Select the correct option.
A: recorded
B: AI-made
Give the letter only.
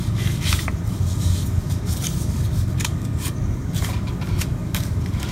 B